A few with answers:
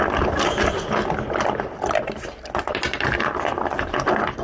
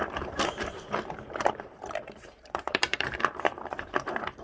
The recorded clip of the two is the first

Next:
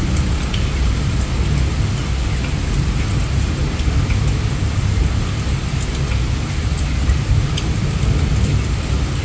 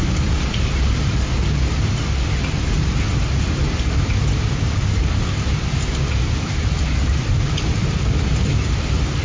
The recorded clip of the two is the first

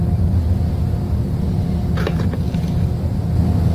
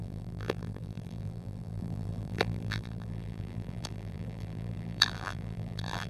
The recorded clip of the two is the first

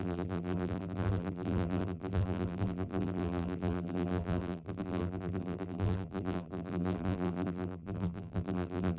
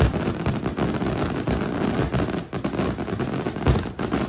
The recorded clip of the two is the second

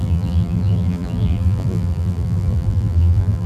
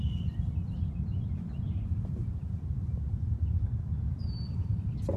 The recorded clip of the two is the second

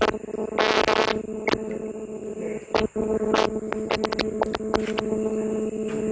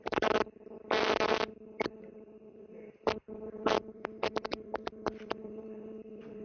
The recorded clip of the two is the first